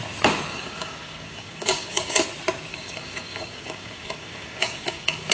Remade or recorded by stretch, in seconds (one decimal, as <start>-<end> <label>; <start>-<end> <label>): 0.0-0.5 recorded; 0.5-2.2 remade; 2.2-2.7 recorded; 2.7-5.3 remade